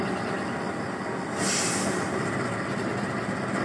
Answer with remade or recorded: recorded